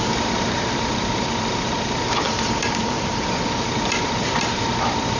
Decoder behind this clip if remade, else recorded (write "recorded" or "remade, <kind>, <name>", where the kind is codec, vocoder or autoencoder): remade, vocoder, BigVGAN v2